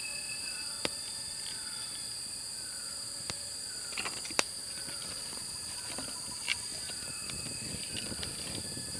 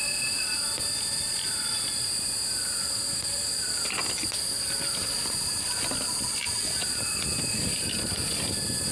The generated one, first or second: first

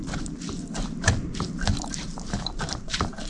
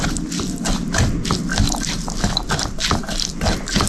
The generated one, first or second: first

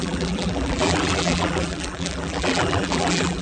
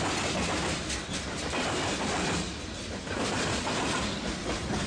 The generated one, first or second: first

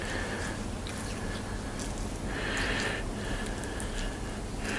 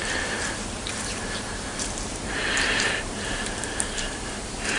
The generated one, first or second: second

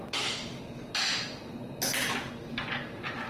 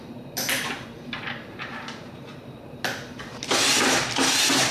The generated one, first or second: second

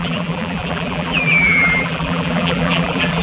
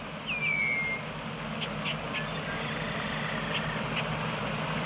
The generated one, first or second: first